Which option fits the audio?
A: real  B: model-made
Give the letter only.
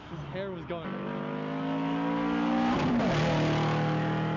A